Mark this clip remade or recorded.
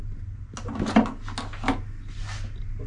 recorded